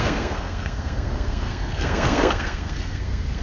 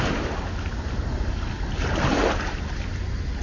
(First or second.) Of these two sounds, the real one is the second